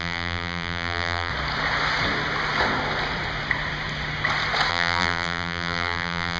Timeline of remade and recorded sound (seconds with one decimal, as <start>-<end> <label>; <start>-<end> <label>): 0.0-1.3 remade; 1.3-4.7 recorded; 4.7-6.4 remade